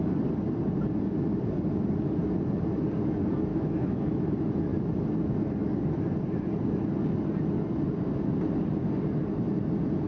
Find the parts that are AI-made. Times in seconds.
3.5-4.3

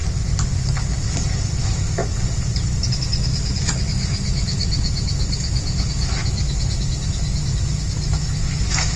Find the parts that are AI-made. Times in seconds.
1.6-2.0; 2.9-9.0

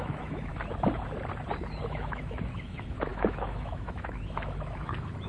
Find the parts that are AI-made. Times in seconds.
0.0-0.5; 1.9-5.3

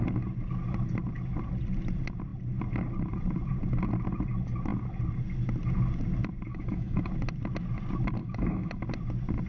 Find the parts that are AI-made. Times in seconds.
6.5-7.1; 8.2-8.8

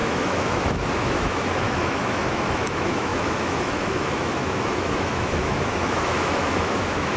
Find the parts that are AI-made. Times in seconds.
0.0-7.2

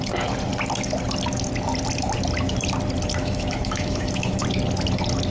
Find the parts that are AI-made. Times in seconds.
3.2-4.4

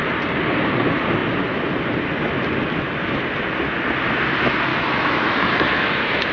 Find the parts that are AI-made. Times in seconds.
4.7-6.3

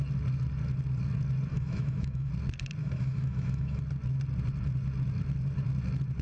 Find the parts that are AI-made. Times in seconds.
1.5-2.3; 2.8-3.8